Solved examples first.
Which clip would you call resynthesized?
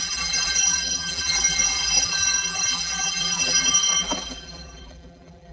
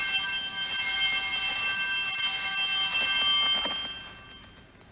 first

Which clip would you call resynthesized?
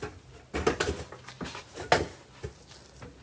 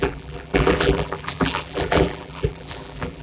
second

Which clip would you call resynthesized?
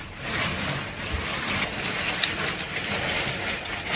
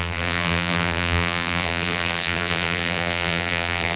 second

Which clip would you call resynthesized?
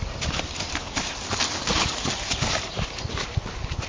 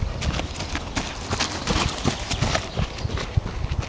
first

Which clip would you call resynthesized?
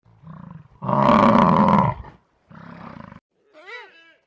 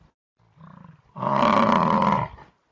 first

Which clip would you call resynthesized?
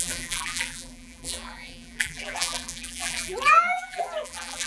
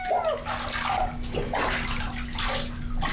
first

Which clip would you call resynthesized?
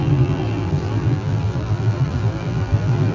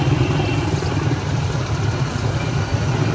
first